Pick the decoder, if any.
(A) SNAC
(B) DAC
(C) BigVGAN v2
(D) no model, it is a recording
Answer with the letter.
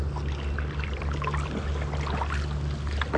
D